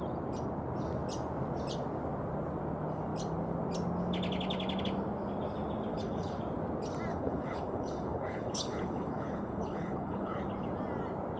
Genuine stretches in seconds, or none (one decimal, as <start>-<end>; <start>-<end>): 0.0-5.9; 6.4-7.1; 10.4-11.4